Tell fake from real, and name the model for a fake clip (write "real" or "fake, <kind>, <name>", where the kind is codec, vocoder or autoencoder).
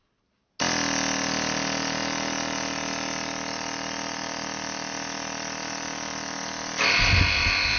real